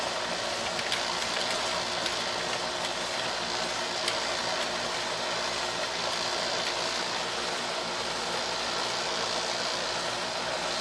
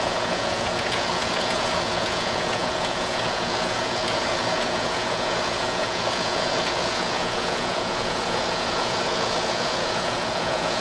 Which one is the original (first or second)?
first